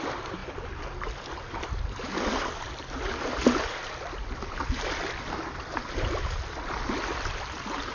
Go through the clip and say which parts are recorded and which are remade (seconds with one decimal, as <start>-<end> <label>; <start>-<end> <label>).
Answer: 0.0-7.9 recorded